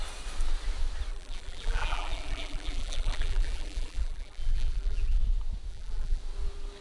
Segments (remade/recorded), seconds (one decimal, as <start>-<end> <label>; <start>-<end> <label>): 0.0-1.1 recorded; 1.1-5.2 remade; 5.2-5.7 recorded; 5.7-6.2 remade; 6.2-6.8 recorded